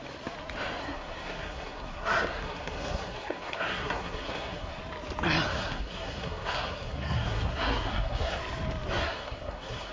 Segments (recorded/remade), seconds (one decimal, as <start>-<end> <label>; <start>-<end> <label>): 0.0-0.8 recorded; 0.8-4.8 remade; 4.8-5.5 recorded; 5.5-8.4 remade; 8.4-9.0 recorded; 9.0-9.9 remade